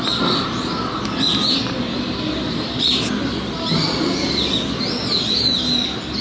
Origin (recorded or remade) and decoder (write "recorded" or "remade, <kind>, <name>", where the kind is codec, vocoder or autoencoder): recorded